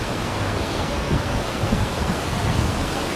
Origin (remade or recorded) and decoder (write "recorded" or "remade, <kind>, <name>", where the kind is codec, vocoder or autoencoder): remade, codec, SNAC